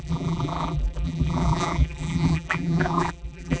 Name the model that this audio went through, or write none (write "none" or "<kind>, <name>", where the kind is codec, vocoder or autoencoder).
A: vocoder, BigVGAN v2